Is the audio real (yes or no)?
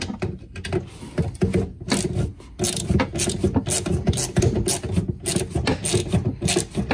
yes